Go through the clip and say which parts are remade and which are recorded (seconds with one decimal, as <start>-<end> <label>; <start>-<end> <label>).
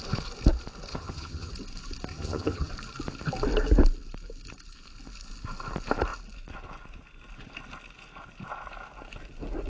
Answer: 0.0-0.9 recorded; 0.9-1.5 remade; 1.5-2.1 recorded; 2.1-2.7 remade; 2.7-9.7 recorded